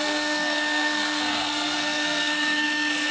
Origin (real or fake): fake